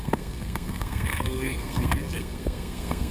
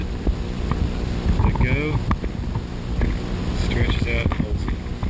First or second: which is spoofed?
first